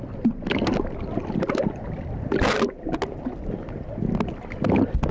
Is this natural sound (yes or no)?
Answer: yes